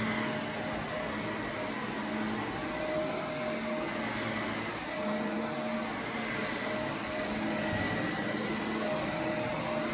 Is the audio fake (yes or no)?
no